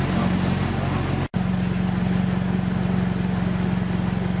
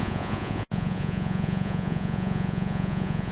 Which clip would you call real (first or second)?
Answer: first